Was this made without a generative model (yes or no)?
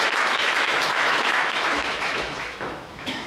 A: no